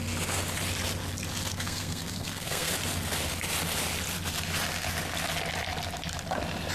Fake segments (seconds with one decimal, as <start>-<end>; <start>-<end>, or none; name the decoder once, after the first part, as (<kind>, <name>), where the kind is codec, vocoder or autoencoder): 1.5-2.7 (codec, SNAC)